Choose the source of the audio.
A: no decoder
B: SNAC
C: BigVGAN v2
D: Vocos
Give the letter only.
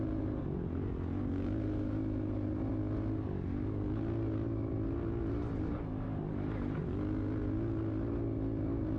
A